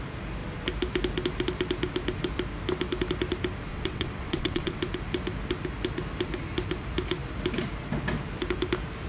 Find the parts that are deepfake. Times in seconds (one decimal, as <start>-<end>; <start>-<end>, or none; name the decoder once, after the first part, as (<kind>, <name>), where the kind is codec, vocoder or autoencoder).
3.7-4.8 (vocoder, WaveNeXt)